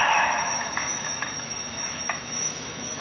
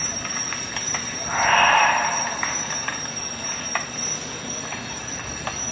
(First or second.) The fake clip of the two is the first